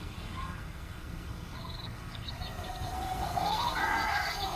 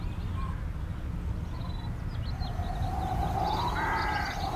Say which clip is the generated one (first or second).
first